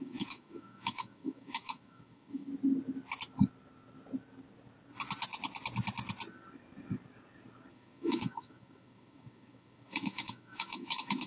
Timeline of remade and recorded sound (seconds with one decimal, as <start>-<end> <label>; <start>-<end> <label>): 0.0-2.5 remade; 2.5-7.7 recorded; 7.7-11.3 remade